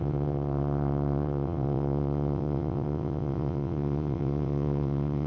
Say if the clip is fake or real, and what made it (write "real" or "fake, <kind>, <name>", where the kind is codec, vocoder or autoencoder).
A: fake, vocoder, WaveNeXt